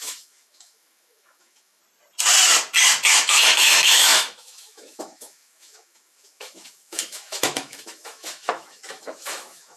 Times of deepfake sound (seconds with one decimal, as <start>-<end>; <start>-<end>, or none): 0.0-1.8; 3.1-9.8